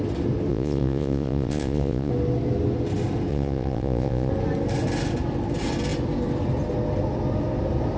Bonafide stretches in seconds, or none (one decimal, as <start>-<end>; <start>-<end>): 0.0-0.5; 2.1-3.3; 4.3-8.0